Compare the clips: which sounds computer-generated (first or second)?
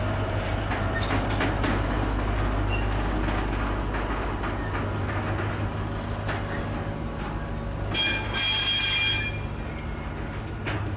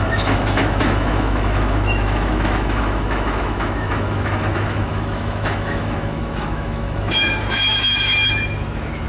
second